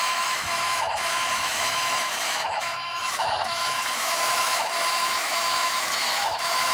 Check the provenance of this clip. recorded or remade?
remade